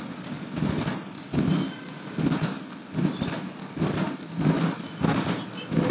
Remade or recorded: recorded